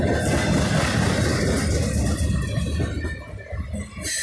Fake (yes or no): no